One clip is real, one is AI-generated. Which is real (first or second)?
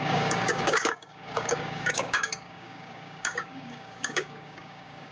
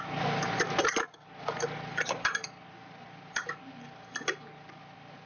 second